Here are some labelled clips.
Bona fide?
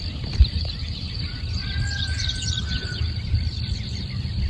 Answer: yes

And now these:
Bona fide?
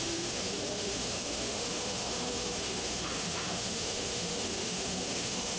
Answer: no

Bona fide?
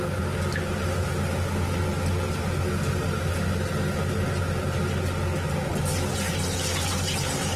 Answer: yes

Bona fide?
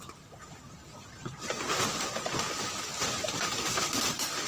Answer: no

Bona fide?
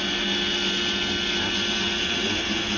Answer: yes